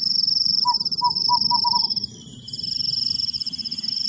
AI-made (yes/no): no